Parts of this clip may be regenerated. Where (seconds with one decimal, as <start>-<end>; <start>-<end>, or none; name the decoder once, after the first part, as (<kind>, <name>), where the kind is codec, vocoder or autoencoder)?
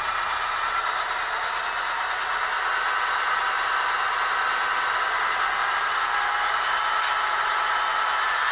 none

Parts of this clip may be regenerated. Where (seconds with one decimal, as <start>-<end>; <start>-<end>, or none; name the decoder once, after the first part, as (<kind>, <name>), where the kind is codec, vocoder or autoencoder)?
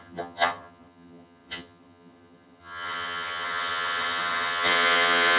0.0-5.4 (vocoder, HiFi-GAN)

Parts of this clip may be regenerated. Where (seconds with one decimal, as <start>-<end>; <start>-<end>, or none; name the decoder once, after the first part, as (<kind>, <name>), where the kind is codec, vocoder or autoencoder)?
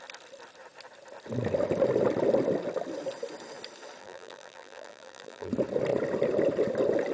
4.0-5.5 (vocoder, BigVGAN v2)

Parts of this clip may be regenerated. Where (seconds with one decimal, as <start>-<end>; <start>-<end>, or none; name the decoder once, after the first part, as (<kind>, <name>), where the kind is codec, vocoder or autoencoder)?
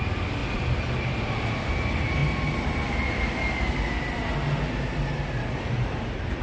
none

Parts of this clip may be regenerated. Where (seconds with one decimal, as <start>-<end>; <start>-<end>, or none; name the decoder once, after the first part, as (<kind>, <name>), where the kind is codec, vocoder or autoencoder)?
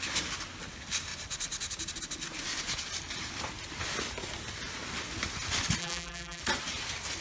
5.8-6.4 (vocoder, BigVGAN v2)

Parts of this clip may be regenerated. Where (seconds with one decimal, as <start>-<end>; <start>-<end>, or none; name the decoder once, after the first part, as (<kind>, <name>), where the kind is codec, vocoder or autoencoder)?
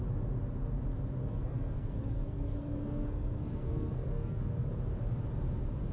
1.2-4.7 (codec, SNAC)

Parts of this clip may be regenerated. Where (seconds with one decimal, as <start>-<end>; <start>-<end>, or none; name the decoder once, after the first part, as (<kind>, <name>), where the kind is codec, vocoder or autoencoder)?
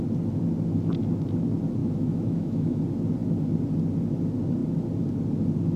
1.8-2.8 (autoencoder, DAC-VAE)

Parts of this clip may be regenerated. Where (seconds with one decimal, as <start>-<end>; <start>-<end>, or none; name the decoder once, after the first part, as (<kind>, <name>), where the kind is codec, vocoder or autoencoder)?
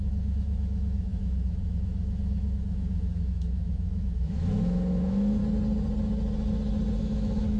0.0-5.4 (autoencoder, DAC-VAE); 7.0-7.6